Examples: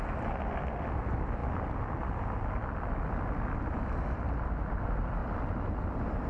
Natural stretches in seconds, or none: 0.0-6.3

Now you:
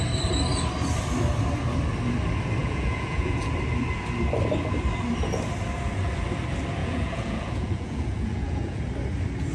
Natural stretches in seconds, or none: 0.0-2.6; 3.5-6.8; 8.8-9.5